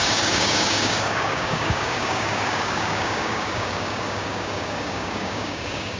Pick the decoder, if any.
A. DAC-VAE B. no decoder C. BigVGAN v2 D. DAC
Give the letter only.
D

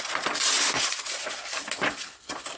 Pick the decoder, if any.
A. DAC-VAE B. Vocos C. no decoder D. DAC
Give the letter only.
C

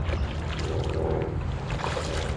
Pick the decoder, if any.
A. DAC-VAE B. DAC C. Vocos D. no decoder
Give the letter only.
D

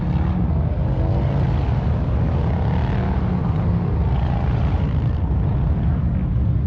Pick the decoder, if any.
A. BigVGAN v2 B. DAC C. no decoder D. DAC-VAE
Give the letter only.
C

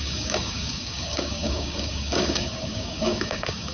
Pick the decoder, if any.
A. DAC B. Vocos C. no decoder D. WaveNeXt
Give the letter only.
A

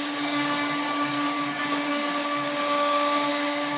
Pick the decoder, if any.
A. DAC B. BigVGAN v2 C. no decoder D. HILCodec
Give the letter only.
A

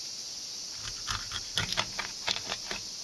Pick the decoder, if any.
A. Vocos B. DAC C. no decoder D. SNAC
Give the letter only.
C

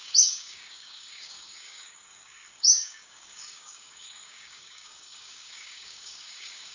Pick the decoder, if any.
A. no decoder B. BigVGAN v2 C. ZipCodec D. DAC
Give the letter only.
D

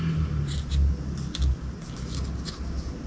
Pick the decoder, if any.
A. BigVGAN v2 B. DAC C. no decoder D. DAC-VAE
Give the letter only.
C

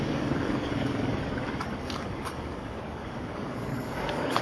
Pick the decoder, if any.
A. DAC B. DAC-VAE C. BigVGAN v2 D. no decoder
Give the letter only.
A